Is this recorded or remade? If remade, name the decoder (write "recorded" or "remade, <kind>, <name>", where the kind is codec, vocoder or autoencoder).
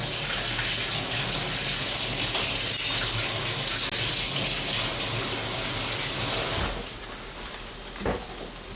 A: recorded